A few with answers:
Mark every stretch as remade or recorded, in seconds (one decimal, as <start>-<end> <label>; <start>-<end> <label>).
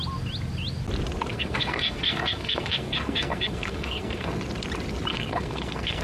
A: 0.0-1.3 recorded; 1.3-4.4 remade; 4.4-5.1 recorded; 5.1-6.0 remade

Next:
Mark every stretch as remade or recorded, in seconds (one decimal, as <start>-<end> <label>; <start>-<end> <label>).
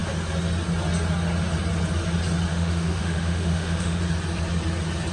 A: 0.0-2.5 recorded; 2.5-4.0 remade; 4.0-5.1 recorded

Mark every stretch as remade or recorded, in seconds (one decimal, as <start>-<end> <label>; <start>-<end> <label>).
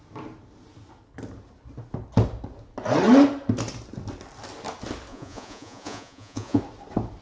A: 0.0-5.1 recorded; 5.1-6.6 remade; 6.6-7.2 recorded